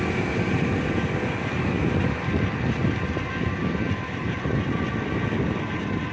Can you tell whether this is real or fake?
real